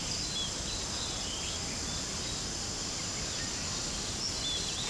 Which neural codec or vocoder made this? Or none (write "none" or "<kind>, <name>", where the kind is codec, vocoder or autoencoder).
none